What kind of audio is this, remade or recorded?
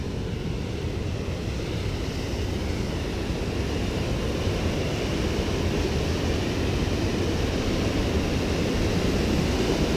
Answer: recorded